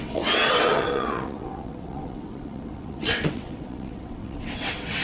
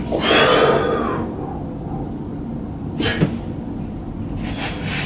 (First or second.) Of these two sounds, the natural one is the second